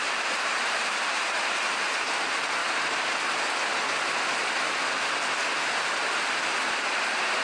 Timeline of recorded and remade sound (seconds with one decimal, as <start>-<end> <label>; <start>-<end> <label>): 0.0-2.6 remade; 2.6-7.0 recorded; 7.0-7.4 remade